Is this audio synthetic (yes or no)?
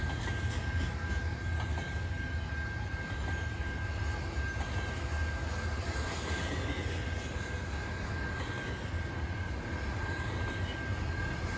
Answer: no